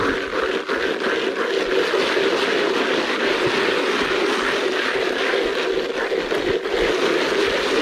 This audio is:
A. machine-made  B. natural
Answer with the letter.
B